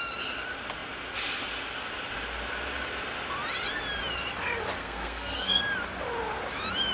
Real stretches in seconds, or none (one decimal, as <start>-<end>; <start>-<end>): 0.0-4.8; 5.6-6.9